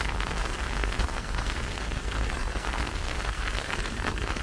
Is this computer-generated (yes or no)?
yes